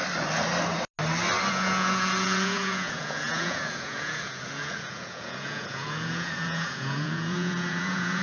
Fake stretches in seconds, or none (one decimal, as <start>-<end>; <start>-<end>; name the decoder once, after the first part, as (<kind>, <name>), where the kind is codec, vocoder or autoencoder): 1.5-8.2 (vocoder, Vocos)